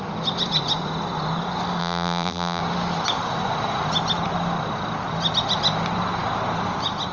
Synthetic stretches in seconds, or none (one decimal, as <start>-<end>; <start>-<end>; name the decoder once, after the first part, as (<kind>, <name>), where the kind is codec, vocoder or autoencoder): 1.8-2.6 (vocoder, BigVGAN v2)